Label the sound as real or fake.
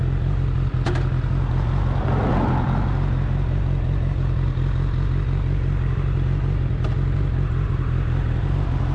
real